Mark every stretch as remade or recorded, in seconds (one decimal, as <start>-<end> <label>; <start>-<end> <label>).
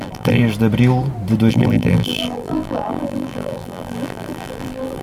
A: 0.0-0.4 remade; 0.4-1.5 recorded; 1.5-5.0 remade